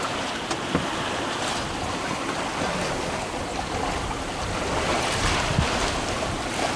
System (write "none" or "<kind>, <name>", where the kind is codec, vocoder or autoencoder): none